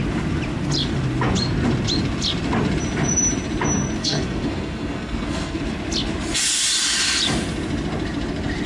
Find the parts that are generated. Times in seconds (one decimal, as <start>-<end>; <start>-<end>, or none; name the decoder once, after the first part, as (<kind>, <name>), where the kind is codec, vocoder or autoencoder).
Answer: 4.0-5.6 (codec, SNAC)